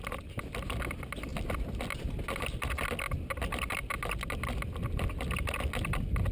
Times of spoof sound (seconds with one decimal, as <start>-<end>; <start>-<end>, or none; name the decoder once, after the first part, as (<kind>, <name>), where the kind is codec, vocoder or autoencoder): none